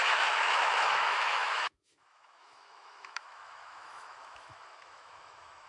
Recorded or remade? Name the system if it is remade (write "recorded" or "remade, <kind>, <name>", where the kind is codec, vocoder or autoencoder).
remade, autoencoder, DAC-VAE